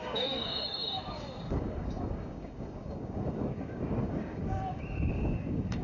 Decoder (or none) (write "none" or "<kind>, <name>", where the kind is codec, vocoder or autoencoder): codec, DAC